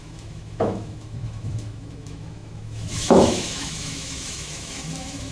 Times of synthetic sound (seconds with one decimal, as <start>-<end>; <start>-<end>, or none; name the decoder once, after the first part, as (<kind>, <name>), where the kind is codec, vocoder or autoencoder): 0.0-5.3 (autoencoder, DAC-VAE)